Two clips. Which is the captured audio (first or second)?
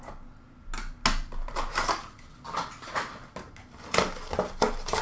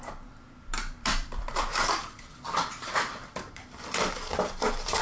first